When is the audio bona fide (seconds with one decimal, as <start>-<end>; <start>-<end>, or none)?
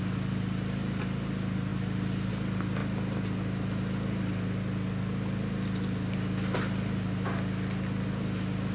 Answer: 0.0-8.7